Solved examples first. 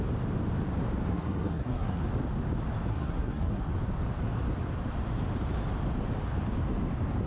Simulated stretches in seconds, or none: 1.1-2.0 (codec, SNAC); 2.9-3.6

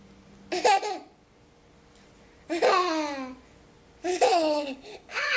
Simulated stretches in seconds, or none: 4.1-5.4 (codec, HILCodec)

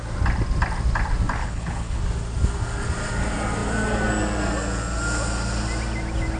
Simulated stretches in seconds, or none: 1.4-2.0 (codec, HILCodec)

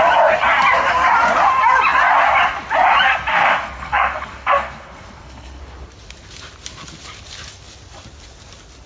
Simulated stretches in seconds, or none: 3.3-5.6 (codec, SNAC)